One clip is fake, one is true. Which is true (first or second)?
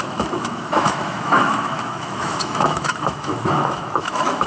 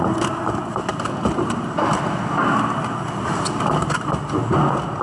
second